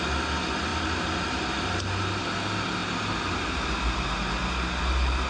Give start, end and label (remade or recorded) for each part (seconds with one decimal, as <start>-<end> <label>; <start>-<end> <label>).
0.0-5.3 recorded